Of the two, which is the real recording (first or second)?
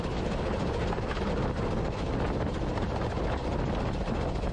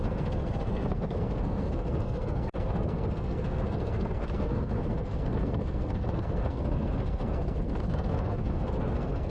first